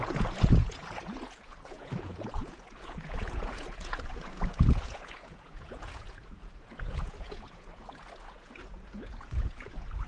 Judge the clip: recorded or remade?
remade